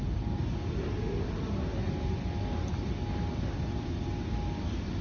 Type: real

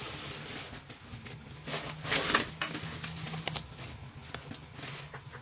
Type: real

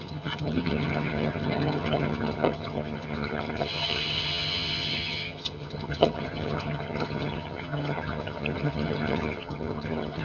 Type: fake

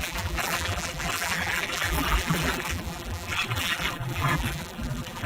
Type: fake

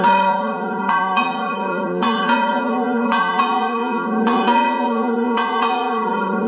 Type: fake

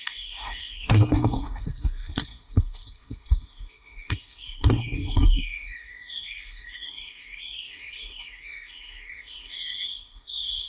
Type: fake